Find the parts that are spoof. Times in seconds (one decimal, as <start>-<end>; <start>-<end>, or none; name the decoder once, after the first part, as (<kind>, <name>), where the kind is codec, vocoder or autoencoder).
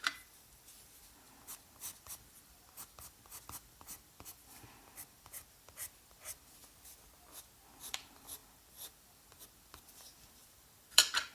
0.0-6.6 (vocoder, BigVGAN v2); 7.9-11.3